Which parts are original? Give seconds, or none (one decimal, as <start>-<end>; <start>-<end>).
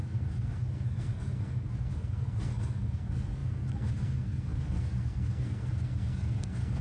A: none